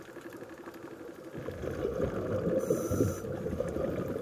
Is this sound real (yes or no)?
yes